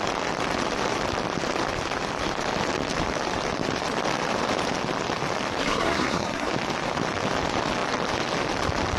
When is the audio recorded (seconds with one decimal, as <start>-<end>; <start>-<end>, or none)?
0.0-5.6; 6.5-9.0